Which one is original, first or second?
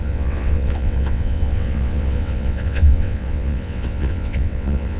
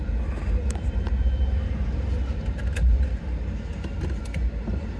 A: second